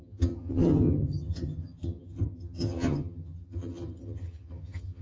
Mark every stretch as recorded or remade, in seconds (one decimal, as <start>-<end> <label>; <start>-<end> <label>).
0.0-5.0 remade